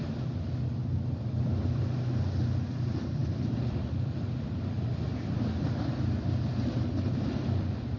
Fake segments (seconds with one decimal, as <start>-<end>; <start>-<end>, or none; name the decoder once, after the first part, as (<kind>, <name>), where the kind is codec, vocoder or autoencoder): 0.8-1.8 (vocoder, BigVGAN v2); 3.2-8.0